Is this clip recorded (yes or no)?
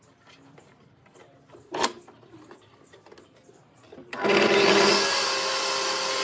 yes